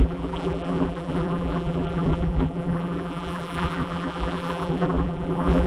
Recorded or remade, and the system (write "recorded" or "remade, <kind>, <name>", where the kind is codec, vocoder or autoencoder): remade, vocoder, BigVGAN v2